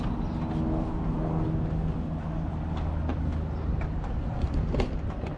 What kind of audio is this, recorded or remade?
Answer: recorded